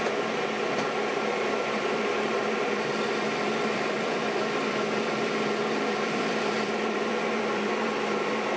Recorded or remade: remade